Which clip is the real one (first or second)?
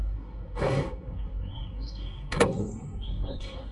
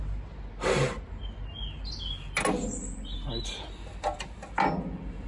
second